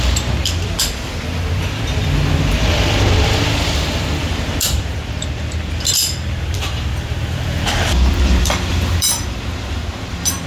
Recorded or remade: remade